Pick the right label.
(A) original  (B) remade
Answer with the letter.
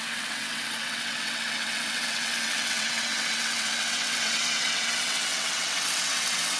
B